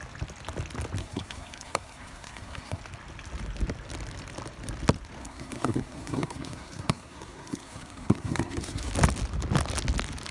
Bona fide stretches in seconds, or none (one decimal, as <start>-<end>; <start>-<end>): 0.0-1.0; 2.8-5.2; 8.9-10.3